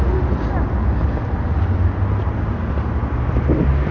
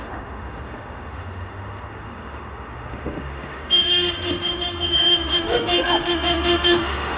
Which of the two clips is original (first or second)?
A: first